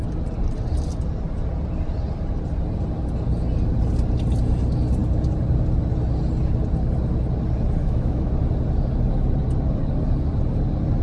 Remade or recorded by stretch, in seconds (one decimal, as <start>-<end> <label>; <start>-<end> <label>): 0.0-7.8 recorded; 7.8-8.3 remade; 8.3-11.0 recorded